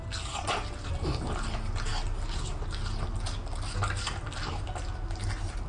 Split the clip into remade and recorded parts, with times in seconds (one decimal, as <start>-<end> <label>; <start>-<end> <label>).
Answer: 0.0-5.7 recorded